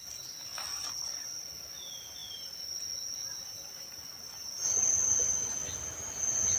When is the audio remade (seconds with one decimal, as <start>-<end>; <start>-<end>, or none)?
none

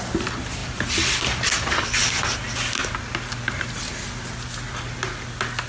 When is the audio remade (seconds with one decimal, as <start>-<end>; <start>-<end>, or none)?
0.6-2.5

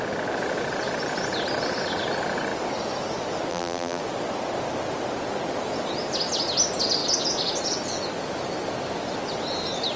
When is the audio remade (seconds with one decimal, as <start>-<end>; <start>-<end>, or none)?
3.5-4.0

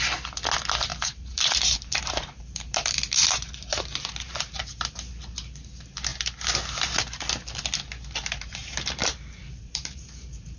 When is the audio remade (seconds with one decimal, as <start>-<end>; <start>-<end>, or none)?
0.9-4.6; 8.2-10.6